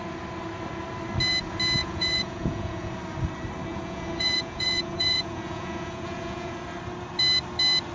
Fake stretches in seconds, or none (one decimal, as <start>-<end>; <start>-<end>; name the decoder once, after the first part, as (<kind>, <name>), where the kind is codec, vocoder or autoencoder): 1.8-2.9 (vocoder, Vocos); 3.7-6.5